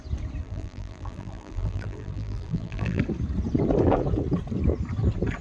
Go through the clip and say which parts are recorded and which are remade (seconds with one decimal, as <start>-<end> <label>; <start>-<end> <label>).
0.0-0.4 recorded; 0.4-3.0 remade; 3.0-5.4 recorded

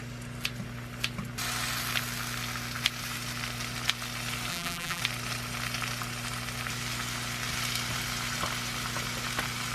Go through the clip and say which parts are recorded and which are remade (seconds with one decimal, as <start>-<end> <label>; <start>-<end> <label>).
0.0-4.5 recorded; 4.5-5.0 remade; 5.0-9.7 recorded

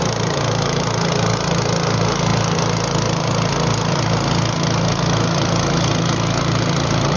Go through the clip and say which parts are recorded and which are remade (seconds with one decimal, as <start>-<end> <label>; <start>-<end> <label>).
0.0-7.2 recorded

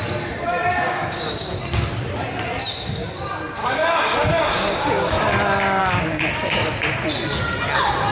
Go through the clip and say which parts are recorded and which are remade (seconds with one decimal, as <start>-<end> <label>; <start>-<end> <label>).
0.0-0.7 recorded; 0.7-1.5 remade; 1.5-3.6 recorded; 3.6-5.2 remade; 5.2-5.8 recorded; 5.8-6.7 remade; 6.7-8.1 recorded

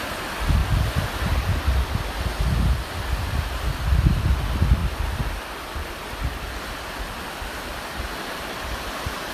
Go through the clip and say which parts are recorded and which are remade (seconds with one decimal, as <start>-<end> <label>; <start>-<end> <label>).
0.0-9.3 recorded

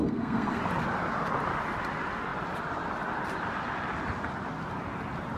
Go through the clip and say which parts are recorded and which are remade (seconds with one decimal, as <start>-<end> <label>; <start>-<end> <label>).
0.0-0.6 remade; 0.6-5.4 recorded